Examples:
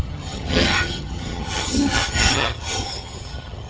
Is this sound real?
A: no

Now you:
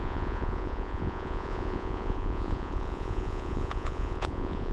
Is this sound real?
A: no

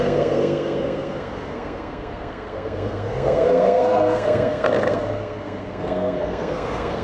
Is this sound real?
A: no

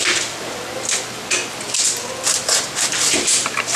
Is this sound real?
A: yes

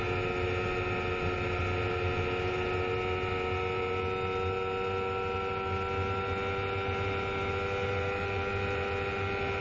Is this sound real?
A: yes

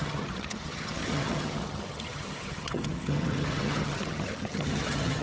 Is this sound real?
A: no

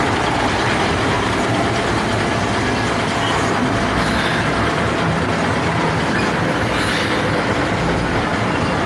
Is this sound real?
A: yes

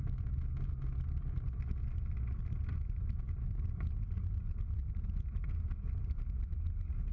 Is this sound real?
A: yes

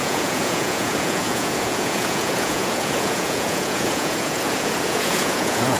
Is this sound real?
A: no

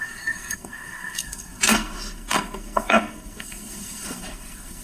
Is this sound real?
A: no